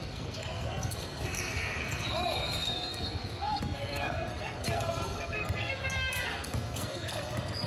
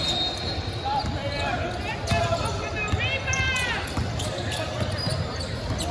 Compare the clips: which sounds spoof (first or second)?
first